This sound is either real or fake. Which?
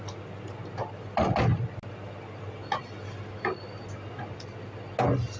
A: real